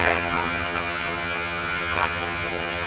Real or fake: fake